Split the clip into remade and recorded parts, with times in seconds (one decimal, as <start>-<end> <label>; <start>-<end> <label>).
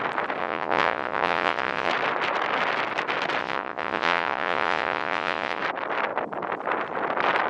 0.0-0.4 recorded; 0.4-1.9 remade; 1.9-3.4 recorded; 3.4-5.6 remade; 5.6-7.5 recorded